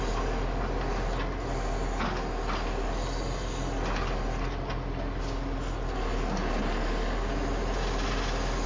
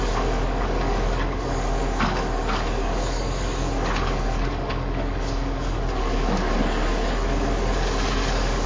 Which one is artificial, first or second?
second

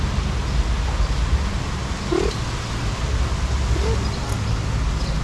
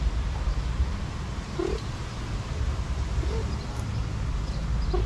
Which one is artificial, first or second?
second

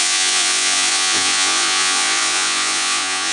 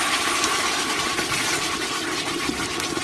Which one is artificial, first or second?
first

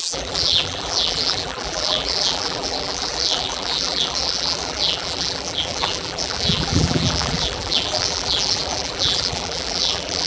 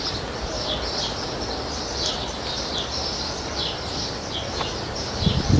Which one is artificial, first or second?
first